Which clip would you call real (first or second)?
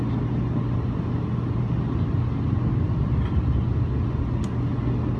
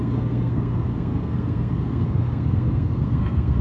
first